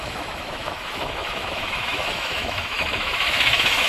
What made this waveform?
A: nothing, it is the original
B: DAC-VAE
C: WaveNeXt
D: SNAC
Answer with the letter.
B